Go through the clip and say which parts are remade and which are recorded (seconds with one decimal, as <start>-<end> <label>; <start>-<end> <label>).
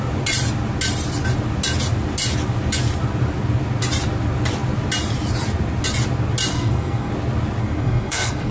0.0-6.5 recorded; 6.5-7.1 remade; 7.1-7.6 recorded; 7.6-8.5 remade